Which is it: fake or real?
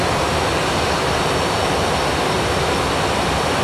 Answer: real